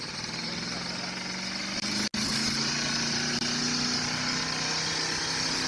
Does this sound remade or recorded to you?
recorded